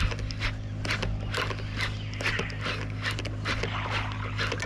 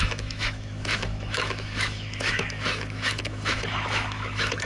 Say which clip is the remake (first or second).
second